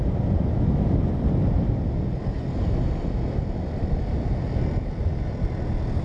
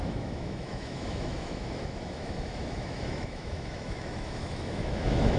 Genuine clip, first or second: first